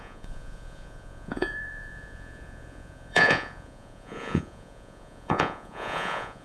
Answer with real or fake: fake